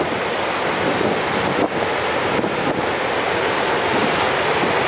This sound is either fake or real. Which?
real